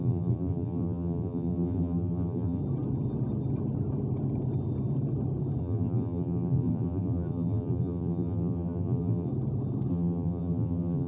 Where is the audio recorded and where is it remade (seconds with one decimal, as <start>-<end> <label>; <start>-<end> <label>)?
0.0-2.6 remade; 2.6-5.6 recorded; 5.6-9.3 remade; 9.3-9.9 recorded; 9.9-11.1 remade